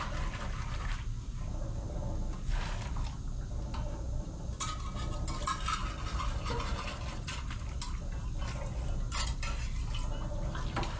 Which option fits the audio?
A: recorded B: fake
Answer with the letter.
A